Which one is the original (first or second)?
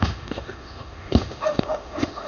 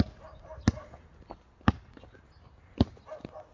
second